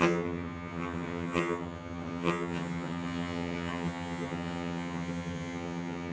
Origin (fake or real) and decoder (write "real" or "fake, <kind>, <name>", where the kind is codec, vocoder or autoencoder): fake, vocoder, HiFi-GAN